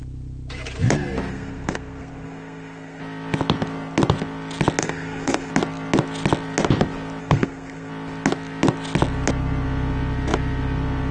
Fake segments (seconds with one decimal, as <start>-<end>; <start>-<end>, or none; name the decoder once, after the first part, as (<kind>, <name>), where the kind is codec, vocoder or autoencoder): 1.3-3.0 (codec, SNAC); 4.8-5.5; 7.2-7.9

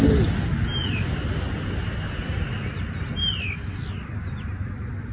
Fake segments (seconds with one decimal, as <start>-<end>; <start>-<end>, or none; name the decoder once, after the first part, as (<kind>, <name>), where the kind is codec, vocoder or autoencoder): none

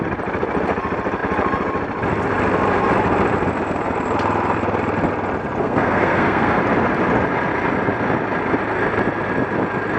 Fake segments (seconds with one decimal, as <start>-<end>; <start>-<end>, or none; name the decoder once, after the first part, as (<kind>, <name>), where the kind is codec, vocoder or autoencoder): 5.6-6.6 (codec, SNAC)

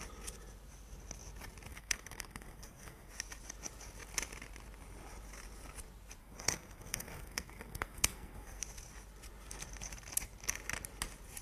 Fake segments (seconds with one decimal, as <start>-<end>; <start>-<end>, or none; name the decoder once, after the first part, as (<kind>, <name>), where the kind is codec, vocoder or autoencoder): 1.7-3.1 (codec, SNAC); 6.2-8.6

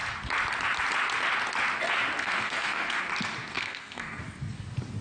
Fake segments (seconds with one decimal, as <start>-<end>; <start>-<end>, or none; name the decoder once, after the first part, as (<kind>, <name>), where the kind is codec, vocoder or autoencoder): 2.2-3.0 (codec, SNAC); 3.5-4.2